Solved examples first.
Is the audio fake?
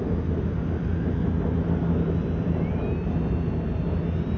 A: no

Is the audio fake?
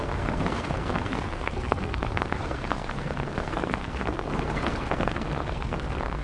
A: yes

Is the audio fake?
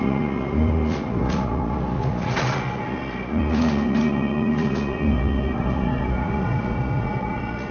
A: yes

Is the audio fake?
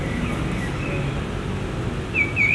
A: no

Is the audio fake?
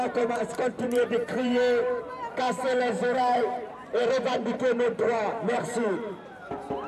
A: yes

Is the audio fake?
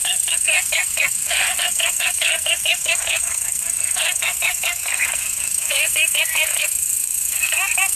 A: yes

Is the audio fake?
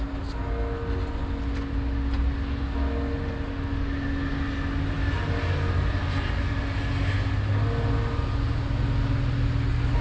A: no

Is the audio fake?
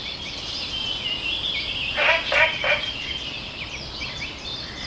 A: no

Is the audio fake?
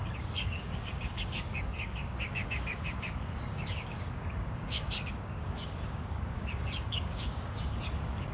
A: yes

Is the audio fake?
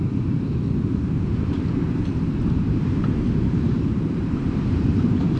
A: yes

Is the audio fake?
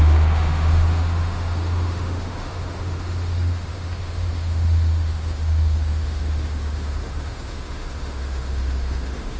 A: yes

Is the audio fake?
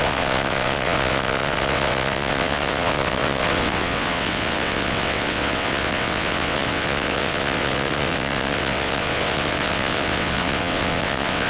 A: yes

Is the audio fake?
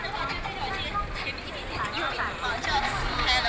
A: no